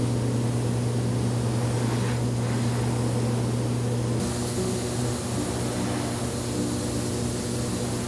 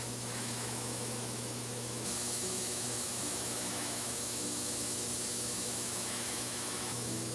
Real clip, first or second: first